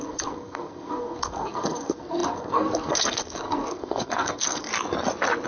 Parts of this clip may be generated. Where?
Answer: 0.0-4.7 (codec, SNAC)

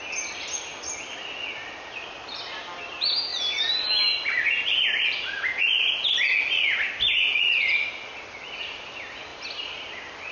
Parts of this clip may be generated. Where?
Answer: none

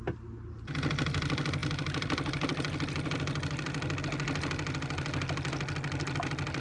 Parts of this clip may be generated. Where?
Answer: none

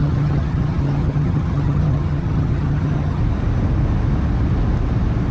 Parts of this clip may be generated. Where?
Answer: 0.0-3.2 (vocoder, HiFi-GAN)

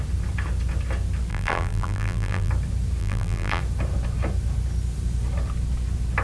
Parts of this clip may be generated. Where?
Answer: 1.3-2.5 (vocoder, BigVGAN v2); 3.0-3.6